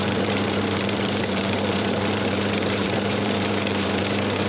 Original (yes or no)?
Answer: no